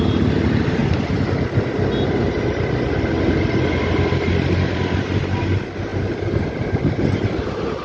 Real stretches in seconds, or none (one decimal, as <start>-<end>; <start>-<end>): 0.0-7.8